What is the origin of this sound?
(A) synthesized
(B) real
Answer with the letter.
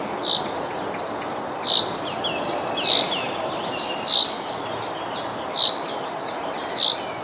B